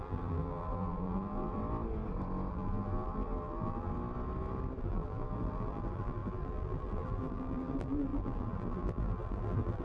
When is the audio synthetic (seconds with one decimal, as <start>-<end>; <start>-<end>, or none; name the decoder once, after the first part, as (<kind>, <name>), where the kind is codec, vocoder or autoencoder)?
0.0-1.6 (vocoder, BigVGAN v2); 2.5-3.9; 4.8-9.8